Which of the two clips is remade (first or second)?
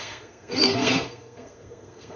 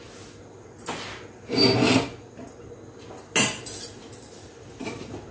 first